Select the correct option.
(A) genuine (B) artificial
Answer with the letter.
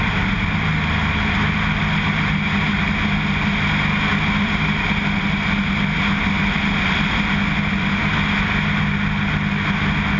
A